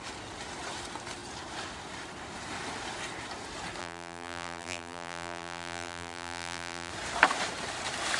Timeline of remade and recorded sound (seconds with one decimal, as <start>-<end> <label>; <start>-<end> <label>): 0.0-3.8 recorded; 3.8-6.9 remade; 6.9-8.2 recorded